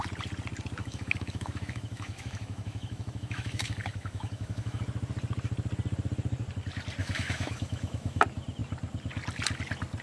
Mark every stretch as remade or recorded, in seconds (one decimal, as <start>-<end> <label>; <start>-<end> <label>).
0.0-0.8 recorded; 0.8-4.8 remade; 4.8-7.0 recorded; 7.0-8.2 remade; 8.2-10.0 recorded